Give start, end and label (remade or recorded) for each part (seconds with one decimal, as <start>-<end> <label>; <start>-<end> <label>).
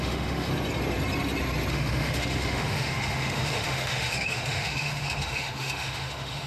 0.0-0.5 remade; 0.5-1.7 recorded; 1.7-6.5 remade